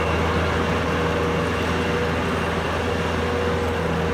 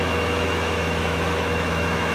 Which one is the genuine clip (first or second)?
first